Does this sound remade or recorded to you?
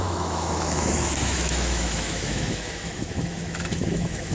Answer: remade